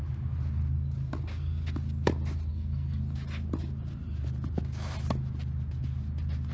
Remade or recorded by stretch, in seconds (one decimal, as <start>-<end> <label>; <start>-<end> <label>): 0.0-2.5 recorded; 2.5-3.0 remade; 3.0-6.5 recorded